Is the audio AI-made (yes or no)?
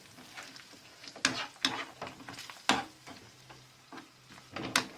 no